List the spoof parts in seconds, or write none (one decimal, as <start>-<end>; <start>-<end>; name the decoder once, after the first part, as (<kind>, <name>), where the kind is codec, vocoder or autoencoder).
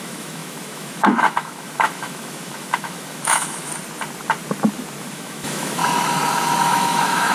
0.0-3.7 (autoencoder, DAC-VAE); 5.0-5.8; 6.6-7.3